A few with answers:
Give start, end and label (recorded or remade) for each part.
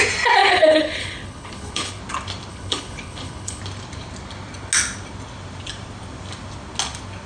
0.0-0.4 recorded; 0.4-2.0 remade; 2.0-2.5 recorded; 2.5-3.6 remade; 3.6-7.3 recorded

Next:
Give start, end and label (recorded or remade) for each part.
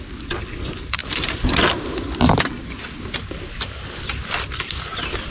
0.0-5.3 recorded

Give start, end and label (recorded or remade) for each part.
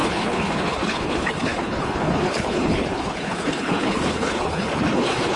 0.0-5.4 remade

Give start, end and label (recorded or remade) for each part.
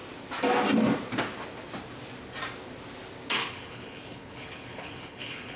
0.0-3.4 recorded; 3.4-5.6 remade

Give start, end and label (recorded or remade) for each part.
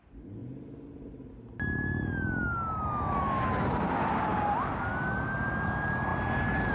0.0-6.7 recorded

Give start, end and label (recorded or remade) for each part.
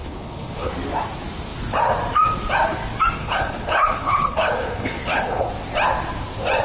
0.0-0.7 remade; 0.7-3.2 recorded; 3.2-5.5 remade; 5.5-6.6 recorded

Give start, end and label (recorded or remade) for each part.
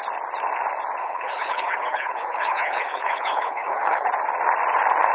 0.0-1.0 recorded; 1.0-4.1 remade; 4.1-5.1 recorded